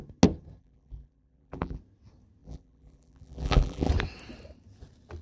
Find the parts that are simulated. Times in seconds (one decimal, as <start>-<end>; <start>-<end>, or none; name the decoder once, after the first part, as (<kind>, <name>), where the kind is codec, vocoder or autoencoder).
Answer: 0.6-1.8 (vocoder, BigVGAN v2); 2.4-3.9